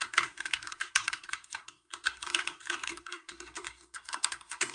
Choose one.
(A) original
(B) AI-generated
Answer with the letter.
B